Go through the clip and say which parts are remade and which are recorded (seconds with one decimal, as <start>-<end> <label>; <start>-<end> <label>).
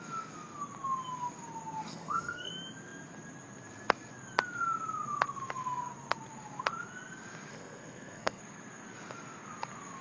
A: 0.0-1.9 recorded; 1.9-2.5 remade; 2.5-7.5 recorded; 7.5-8.4 remade; 8.4-10.0 recorded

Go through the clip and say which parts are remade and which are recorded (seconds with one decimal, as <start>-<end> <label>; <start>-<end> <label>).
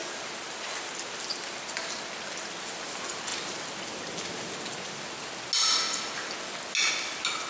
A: 0.0-7.5 recorded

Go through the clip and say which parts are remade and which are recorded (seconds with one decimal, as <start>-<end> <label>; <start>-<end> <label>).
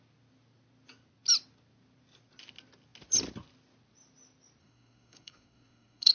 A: 0.0-4.6 recorded; 4.6-6.1 remade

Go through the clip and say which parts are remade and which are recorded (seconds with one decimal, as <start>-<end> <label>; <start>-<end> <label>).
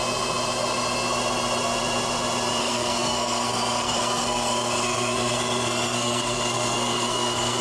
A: 0.0-2.6 recorded; 2.6-7.6 remade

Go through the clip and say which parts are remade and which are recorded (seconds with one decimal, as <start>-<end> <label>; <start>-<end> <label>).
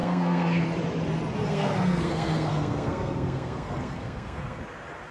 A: 0.0-0.6 remade; 0.6-1.5 recorded; 1.5-4.6 remade; 4.6-5.1 recorded